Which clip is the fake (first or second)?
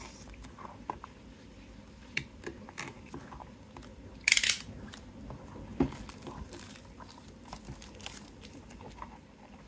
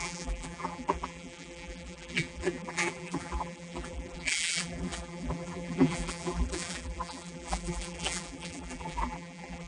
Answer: second